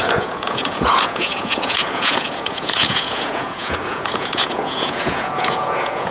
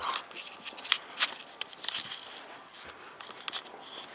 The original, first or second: second